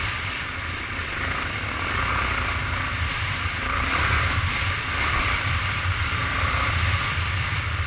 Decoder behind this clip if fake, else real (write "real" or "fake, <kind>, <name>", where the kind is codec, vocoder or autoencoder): fake, vocoder, BigVGAN v2